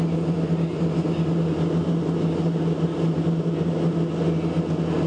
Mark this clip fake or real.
real